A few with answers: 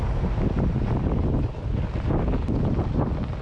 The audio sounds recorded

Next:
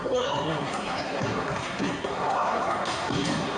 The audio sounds remade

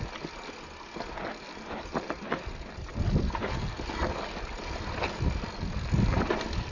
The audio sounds recorded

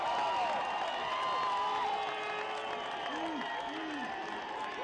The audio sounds recorded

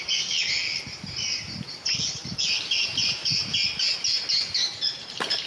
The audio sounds recorded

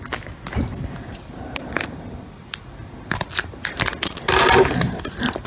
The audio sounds recorded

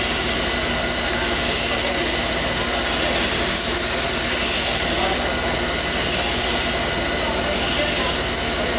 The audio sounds recorded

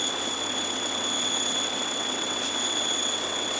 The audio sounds remade